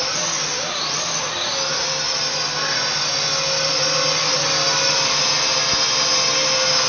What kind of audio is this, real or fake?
real